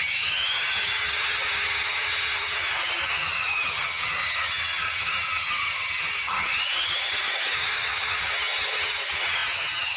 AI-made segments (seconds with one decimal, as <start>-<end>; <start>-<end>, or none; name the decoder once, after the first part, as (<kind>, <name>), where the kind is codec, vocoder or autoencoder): 0.0-10.0 (vocoder, HiFi-GAN)

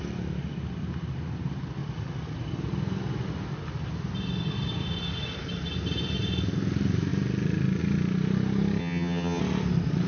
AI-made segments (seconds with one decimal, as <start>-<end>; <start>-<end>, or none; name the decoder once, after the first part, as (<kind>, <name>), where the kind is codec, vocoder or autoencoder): 8.8-9.4 (vocoder, HiFi-GAN)

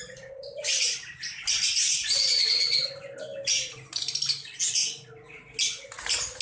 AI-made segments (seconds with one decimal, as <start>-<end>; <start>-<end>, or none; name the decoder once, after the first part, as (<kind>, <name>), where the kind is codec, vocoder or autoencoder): none

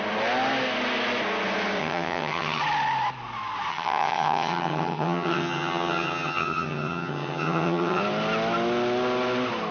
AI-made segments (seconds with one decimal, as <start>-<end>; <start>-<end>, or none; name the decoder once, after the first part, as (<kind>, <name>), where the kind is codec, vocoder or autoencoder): 1.8-2.6 (vocoder, HiFi-GAN); 3.7-8.0